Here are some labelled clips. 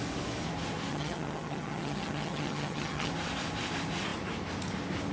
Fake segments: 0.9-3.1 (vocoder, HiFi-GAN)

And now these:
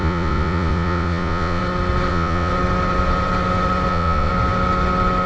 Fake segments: 0.0-1.6 (vocoder, Vocos); 2.1-2.5; 3.9-4.3

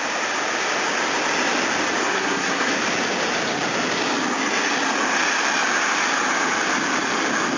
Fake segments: 2.0-2.7 (codec, SNAC)

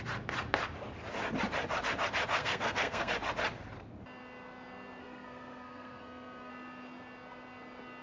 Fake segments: 2.4-3.1 (codec, SNAC); 5.0-6.5